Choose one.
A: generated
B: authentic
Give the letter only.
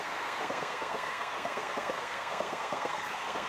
A